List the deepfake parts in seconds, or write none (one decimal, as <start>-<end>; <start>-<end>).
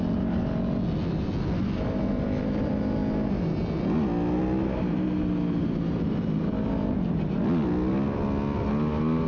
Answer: none